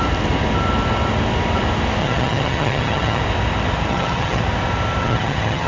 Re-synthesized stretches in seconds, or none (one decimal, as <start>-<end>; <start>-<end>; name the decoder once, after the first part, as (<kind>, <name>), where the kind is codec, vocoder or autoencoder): 2.0-3.2 (vocoder, HiFi-GAN); 3.9-4.4; 5.0-5.7